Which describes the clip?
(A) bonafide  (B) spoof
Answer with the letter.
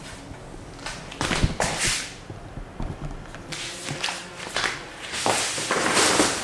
A